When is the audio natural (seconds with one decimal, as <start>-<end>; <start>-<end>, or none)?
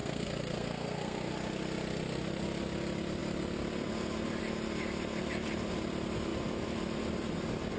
1.3-7.8